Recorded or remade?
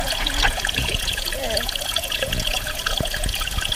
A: remade